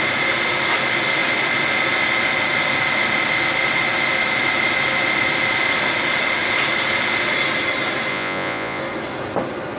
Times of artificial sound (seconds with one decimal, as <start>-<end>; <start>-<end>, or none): 8.1-8.8